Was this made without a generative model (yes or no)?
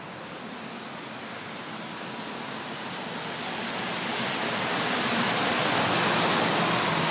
yes